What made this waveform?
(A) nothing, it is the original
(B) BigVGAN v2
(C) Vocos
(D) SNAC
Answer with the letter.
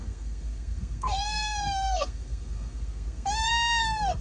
D